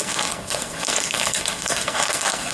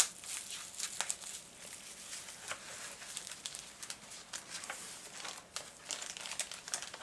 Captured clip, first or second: second